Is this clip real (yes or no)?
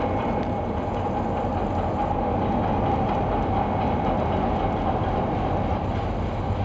yes